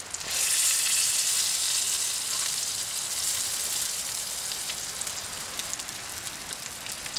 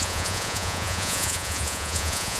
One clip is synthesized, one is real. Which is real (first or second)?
first